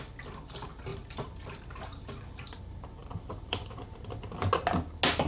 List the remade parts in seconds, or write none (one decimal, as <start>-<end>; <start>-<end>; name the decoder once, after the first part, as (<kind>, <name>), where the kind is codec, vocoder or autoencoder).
0.9-2.6 (vocoder, BigVGAN v2); 3.0-4.1